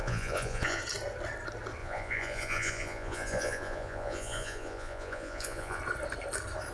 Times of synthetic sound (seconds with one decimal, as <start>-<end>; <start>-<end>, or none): 0.0-0.8; 1.8-5.8